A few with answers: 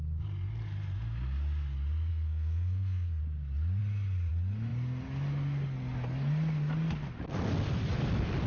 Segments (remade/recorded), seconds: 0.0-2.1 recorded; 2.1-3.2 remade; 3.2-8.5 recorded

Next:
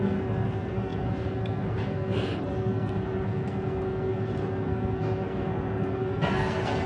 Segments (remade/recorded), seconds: 0.0-6.9 remade